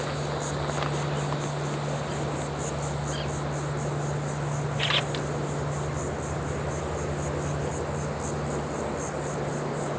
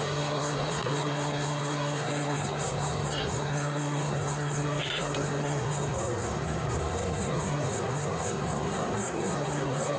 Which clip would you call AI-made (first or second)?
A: second